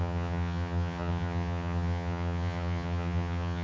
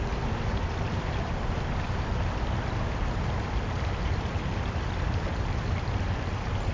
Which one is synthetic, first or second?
first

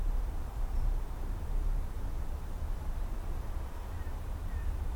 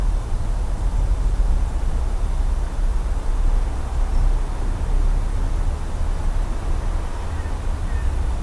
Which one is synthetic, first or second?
first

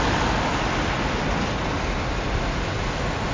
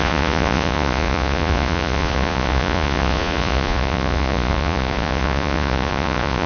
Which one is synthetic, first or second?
second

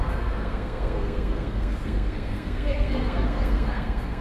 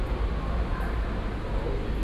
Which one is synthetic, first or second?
first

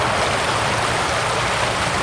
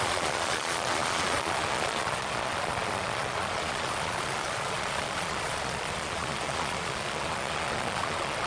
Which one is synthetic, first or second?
second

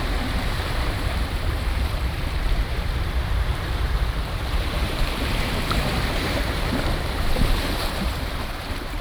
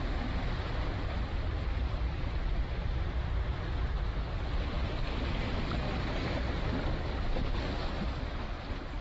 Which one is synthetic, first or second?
first